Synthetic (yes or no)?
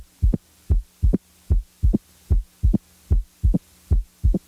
no